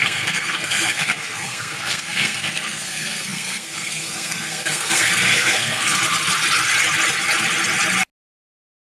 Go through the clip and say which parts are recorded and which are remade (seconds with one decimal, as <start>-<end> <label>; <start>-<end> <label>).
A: 0.0-6.0 remade; 6.0-8.9 recorded